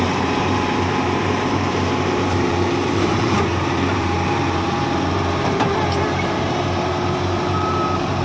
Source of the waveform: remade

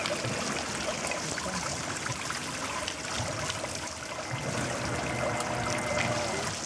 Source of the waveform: recorded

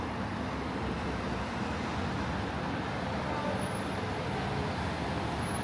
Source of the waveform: recorded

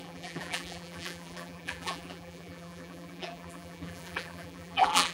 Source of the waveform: remade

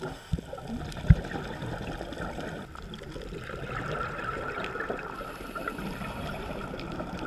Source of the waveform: recorded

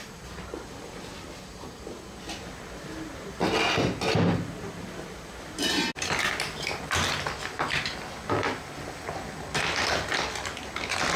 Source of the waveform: recorded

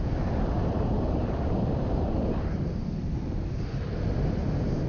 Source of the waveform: remade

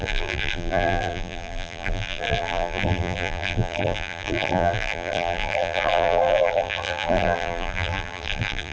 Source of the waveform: remade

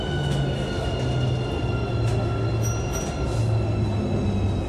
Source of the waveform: recorded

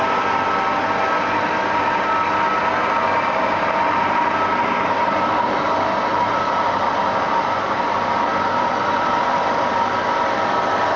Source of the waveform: recorded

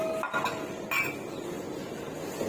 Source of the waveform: recorded